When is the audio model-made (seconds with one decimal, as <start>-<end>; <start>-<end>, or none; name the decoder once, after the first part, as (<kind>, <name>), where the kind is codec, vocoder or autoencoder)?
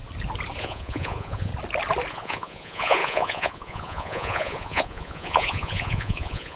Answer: 0.6-1.5 (vocoder, Vocos); 2.1-6.6